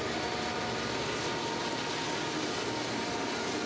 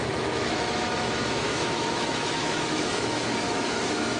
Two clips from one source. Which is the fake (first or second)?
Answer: second